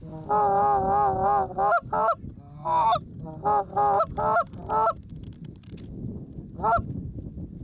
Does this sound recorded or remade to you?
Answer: recorded